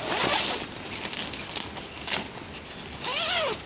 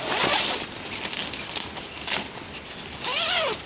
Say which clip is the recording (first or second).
first